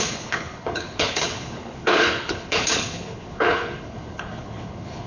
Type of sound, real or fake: fake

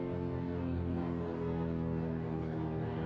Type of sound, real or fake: fake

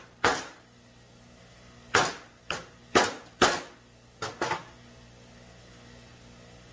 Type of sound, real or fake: real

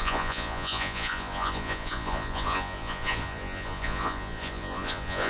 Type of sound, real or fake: fake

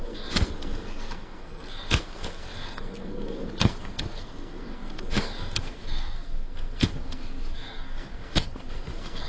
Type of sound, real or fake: fake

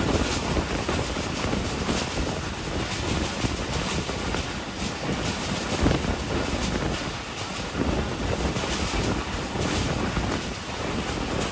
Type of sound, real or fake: real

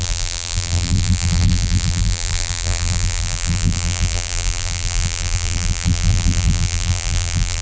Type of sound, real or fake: fake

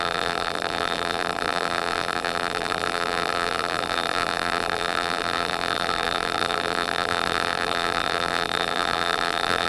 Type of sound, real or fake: fake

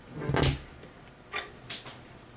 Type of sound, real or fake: real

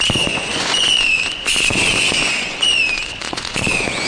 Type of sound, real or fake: fake